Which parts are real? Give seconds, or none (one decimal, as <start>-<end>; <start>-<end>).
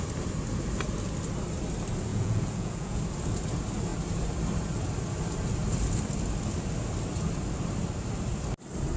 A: 0.0-2.1; 3.0-9.0